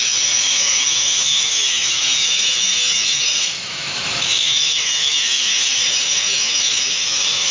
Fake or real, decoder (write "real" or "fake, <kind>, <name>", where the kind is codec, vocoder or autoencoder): fake, autoencoder, DAC-VAE